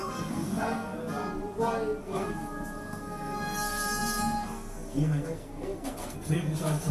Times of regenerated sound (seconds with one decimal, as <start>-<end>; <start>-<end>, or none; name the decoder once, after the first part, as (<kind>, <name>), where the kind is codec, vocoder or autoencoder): 0.0-1.0 (codec, SNAC); 2.0-6.9